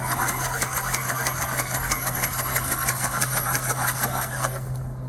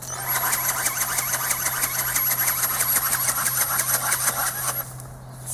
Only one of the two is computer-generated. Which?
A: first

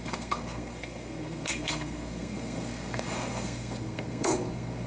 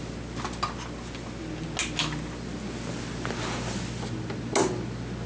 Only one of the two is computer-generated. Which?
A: first